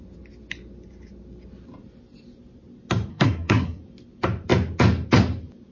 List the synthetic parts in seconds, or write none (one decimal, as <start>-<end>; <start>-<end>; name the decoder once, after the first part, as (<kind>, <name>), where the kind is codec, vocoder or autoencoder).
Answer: 3.1-3.8 (codec, SNAC)